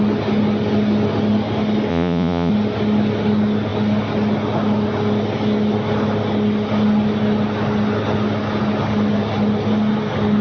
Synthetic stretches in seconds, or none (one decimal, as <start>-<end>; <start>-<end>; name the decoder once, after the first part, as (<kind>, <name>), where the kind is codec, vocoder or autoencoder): 1.9-2.5 (vocoder, Vocos)